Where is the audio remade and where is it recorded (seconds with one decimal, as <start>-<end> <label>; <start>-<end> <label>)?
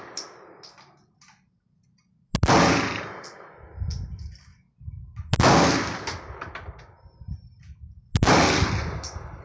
0.0-9.4 recorded